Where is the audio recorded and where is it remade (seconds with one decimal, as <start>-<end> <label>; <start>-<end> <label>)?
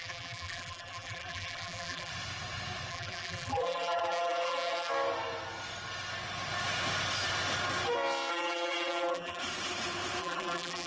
0.0-2.1 remade; 2.1-2.9 recorded; 2.9-4.9 remade; 4.9-8.3 recorded; 8.3-9.4 remade; 9.4-10.2 recorded; 10.2-10.9 remade